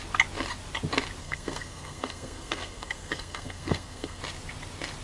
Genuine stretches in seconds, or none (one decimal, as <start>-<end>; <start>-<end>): 0.0-1.2; 4.2-5.0